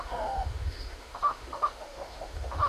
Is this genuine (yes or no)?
no